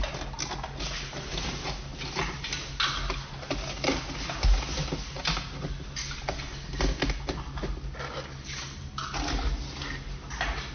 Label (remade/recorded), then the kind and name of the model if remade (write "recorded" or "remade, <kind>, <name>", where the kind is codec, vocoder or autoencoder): recorded